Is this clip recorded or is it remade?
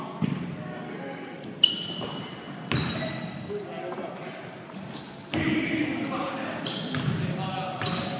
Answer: recorded